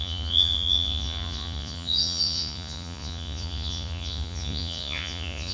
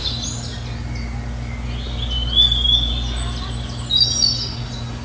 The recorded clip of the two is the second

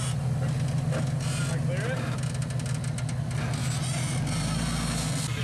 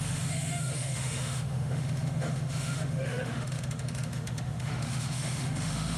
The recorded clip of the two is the first